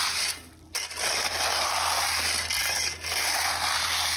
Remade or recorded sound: recorded